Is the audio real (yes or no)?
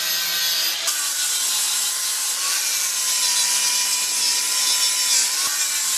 yes